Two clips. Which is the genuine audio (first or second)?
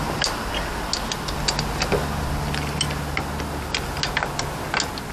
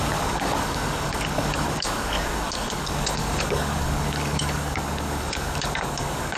first